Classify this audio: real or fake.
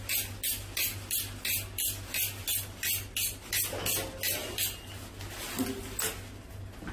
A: real